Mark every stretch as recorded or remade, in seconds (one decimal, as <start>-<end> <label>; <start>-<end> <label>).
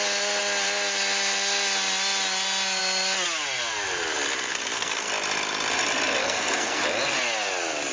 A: 0.0-4.5 recorded; 4.5-5.1 remade; 5.1-6.2 recorded; 6.2-6.8 remade; 6.8-7.9 recorded